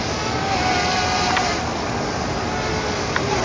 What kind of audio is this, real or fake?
real